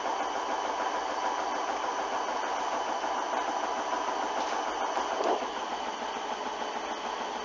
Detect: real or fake real